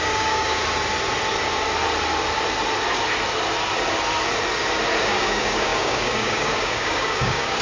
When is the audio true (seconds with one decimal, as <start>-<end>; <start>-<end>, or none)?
0.6-5.0